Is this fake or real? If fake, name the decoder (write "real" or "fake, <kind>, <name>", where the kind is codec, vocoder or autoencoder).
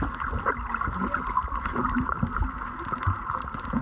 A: real